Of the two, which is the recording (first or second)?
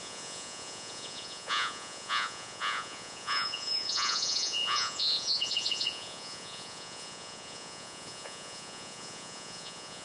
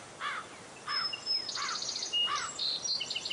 second